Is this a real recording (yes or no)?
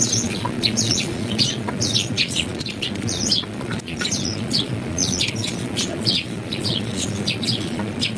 no